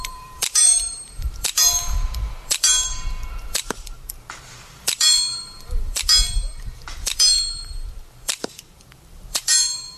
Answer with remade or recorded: remade